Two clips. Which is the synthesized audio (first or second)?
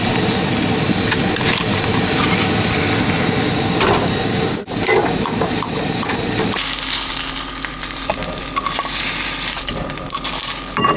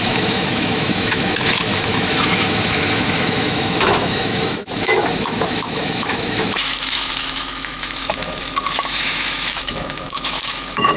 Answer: second